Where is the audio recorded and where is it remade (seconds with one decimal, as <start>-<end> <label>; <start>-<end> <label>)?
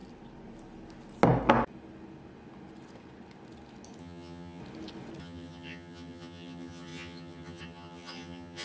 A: 0.0-4.0 recorded; 4.0-4.6 remade; 4.6-5.2 recorded; 5.2-8.6 remade